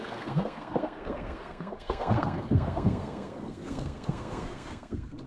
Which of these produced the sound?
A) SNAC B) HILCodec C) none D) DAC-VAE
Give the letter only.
A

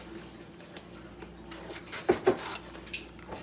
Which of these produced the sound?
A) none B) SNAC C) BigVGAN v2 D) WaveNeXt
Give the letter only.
A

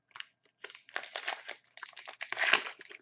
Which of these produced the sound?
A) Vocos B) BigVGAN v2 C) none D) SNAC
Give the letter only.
C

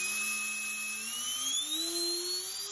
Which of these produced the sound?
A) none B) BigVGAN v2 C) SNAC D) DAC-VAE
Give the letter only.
A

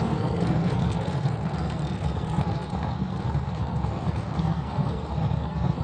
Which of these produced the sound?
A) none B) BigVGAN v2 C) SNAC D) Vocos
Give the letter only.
C